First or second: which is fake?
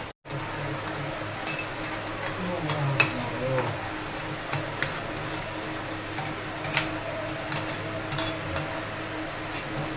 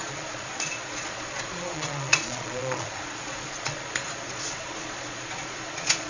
second